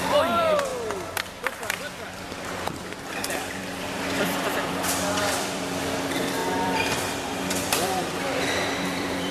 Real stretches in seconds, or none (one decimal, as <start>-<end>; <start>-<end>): 0.7-1.3